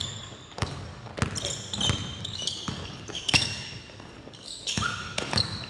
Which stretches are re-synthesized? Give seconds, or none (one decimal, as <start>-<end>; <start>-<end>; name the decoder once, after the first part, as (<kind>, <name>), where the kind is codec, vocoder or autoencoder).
0.0-1.1 (codec, DAC); 2.2-5.7